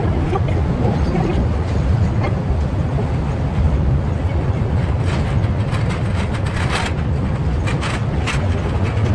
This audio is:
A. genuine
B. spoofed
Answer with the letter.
A